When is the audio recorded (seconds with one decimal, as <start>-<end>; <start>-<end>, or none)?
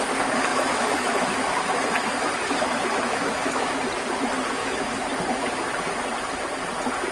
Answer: 0.0-0.5; 3.8-4.6; 5.7-7.1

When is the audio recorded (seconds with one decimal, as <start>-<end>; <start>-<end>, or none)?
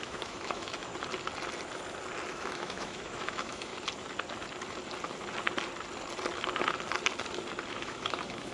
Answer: 0.9-2.3; 3.7-7.7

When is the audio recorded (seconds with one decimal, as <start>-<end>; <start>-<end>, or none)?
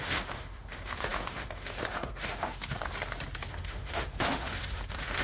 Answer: 2.8-3.5